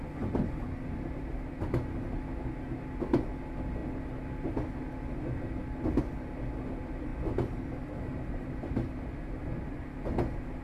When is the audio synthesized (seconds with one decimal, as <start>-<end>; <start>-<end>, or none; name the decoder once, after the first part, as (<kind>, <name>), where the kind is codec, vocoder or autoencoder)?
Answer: none